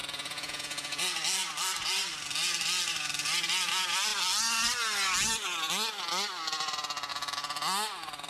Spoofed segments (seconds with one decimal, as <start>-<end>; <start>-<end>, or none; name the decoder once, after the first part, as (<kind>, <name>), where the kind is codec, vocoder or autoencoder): 0.0-1.0 (vocoder, Vocos)